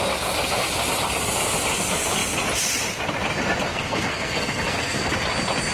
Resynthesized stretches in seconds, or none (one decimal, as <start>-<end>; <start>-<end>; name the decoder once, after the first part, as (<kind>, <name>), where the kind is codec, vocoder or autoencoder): 3.7-5.1 (codec, SNAC)